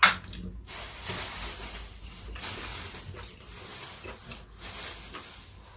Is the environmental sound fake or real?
real